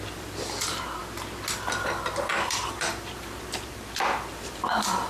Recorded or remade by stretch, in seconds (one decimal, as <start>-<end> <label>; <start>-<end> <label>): 0.0-1.0 remade; 1.0-2.3 recorded; 2.3-5.1 remade